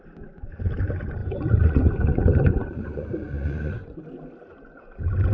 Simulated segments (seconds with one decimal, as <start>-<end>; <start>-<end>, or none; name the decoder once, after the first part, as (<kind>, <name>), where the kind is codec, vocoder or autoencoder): 1.2-4.0 (vocoder, Vocos)